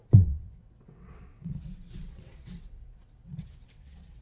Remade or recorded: remade